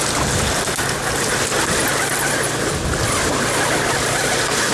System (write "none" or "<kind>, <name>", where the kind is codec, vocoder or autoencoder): none